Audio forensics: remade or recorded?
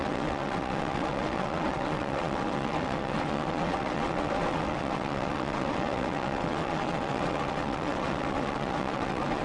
remade